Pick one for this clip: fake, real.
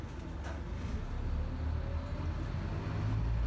real